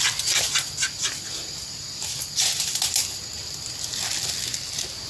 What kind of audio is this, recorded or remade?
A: recorded